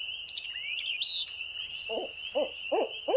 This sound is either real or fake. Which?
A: real